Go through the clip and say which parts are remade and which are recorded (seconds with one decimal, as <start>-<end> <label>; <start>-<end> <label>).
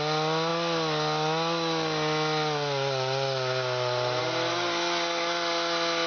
0.0-6.1 recorded